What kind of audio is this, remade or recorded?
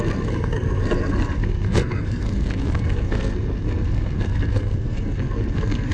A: remade